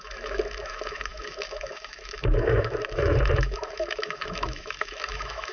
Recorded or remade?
remade